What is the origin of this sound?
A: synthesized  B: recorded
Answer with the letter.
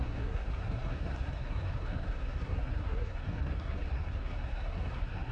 A